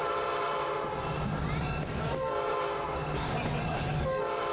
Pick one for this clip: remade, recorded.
recorded